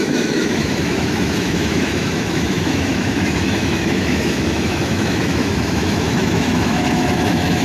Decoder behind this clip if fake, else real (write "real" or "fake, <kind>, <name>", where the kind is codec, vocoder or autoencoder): fake, autoencoder, DAC-VAE